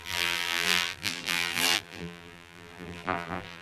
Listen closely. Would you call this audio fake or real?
fake